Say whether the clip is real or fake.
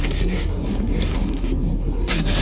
fake